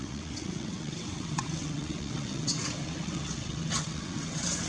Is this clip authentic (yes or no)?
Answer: no